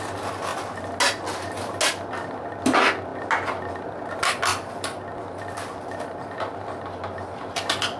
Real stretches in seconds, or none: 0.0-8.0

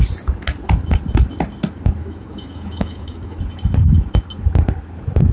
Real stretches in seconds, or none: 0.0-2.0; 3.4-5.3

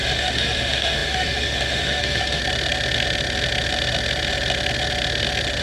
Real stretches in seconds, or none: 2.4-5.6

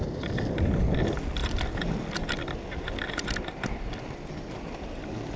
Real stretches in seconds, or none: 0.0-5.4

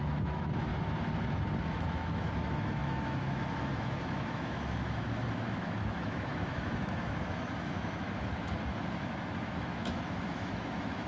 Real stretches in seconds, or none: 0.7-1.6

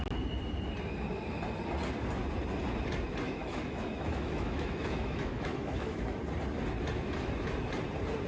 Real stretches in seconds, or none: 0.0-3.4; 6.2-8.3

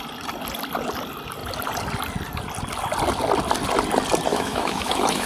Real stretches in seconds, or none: 0.0-4.3